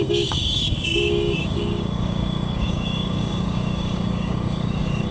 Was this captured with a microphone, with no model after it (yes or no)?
no